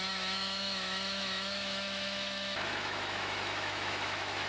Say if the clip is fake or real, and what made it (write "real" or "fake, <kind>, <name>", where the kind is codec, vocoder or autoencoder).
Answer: fake, autoencoder, DAC-VAE